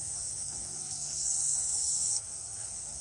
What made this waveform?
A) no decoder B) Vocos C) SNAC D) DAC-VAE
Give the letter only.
C